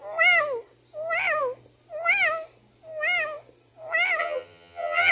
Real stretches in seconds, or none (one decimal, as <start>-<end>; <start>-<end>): 0.0-4.2